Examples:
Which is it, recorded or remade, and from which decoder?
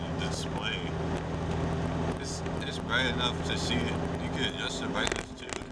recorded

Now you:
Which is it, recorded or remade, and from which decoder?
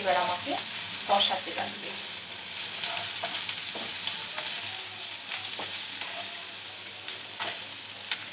recorded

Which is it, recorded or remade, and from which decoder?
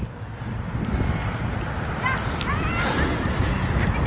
recorded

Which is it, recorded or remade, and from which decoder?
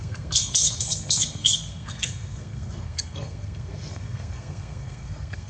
remade, codec, SNAC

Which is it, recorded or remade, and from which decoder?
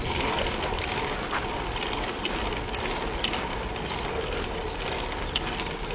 recorded